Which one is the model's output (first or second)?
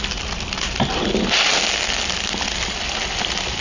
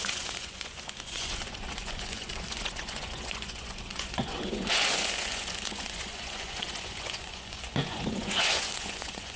second